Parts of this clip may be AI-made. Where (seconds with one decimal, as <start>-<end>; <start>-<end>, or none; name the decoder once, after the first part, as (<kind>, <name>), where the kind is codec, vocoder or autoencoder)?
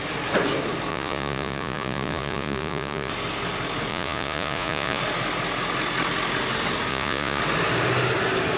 0.9-3.1 (vocoder, Vocos); 3.9-5.0; 6.9-7.4